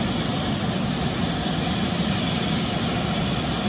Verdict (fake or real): real